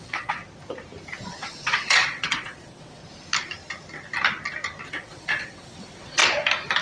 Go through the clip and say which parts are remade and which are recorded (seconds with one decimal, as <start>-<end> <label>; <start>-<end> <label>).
0.0-0.4 remade; 0.4-1.3 recorded; 1.3-3.0 remade; 3.0-4.9 recorded; 4.9-6.2 remade; 6.2-6.8 recorded